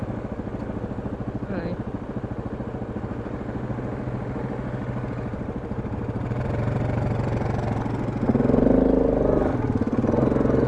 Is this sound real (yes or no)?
yes